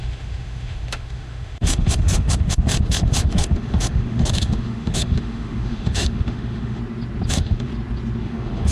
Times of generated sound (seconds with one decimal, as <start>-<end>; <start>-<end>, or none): 0.0-6.8; 7.3-7.7; 8.2-8.7